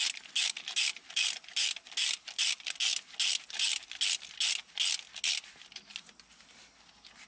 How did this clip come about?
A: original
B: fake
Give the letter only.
A